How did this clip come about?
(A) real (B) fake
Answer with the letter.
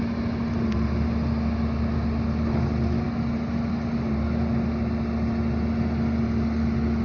A